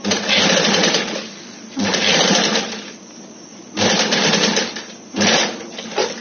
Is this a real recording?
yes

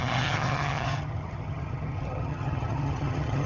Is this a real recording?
no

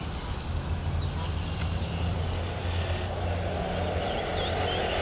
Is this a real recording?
yes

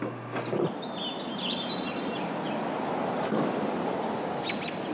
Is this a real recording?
yes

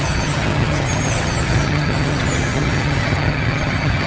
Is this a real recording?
no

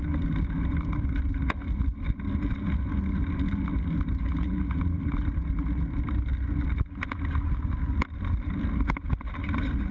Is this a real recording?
yes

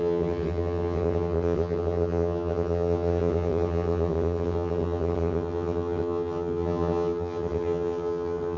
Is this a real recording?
no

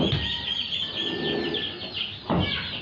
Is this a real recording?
yes